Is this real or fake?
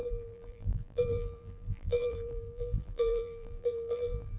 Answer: fake